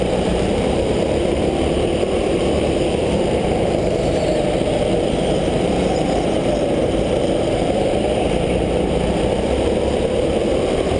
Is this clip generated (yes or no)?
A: yes